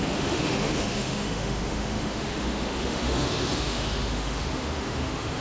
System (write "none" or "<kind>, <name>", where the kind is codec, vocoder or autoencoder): autoencoder, DAC-VAE